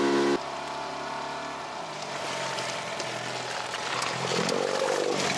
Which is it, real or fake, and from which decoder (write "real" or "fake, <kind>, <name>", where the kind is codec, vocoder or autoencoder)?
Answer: real